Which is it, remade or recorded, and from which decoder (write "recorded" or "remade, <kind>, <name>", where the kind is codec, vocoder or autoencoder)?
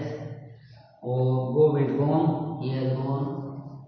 recorded